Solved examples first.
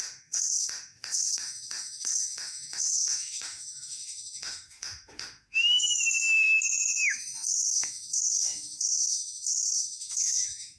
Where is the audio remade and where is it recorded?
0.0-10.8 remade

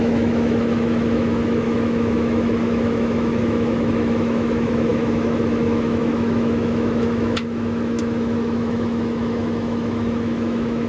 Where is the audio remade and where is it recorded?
0.0-10.9 remade